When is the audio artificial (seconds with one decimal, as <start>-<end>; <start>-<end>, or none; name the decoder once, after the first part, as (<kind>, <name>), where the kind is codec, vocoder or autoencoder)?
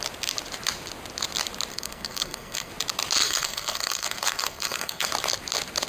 1.7-2.7 (codec, SNAC); 3.2-5.1